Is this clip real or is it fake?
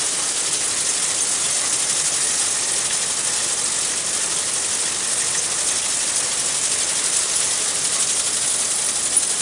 real